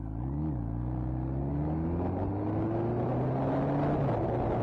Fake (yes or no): no